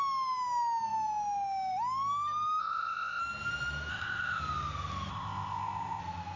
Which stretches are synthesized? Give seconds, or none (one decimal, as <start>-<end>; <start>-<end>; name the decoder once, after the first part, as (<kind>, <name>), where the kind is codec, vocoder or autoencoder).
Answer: 2.6-3.2 (codec, ZipCodec); 3.9-4.4; 5.1-6.0